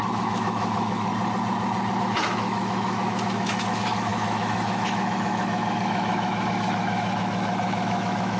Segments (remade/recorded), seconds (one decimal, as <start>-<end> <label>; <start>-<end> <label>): 0.0-1.1 remade; 1.1-2.0 recorded; 2.0-8.4 remade